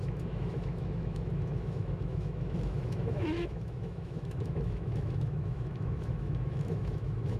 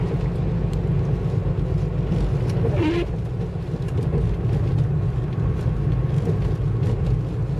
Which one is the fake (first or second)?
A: first